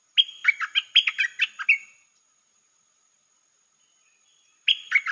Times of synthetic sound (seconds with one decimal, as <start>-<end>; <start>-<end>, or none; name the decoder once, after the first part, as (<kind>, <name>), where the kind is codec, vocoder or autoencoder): none